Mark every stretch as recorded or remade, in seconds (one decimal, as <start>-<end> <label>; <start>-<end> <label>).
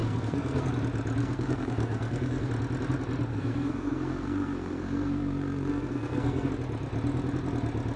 0.0-0.7 remade; 0.7-1.2 recorded; 1.2-2.5 remade; 2.5-3.3 recorded; 3.3-6.5 remade; 6.5-8.0 recorded